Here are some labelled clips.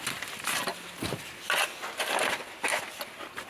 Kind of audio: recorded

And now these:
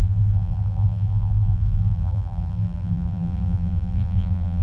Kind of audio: remade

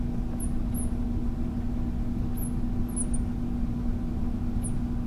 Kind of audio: recorded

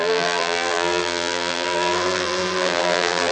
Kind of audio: remade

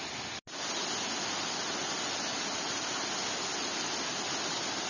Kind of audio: recorded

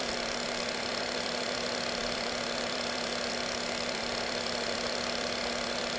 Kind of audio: remade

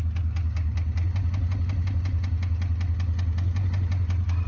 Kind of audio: recorded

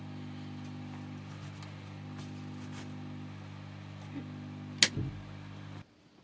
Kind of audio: recorded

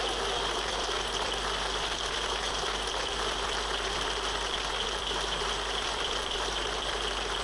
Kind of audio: remade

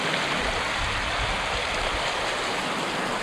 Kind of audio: recorded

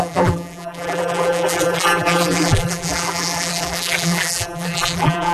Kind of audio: remade